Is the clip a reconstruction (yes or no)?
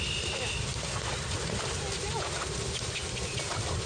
no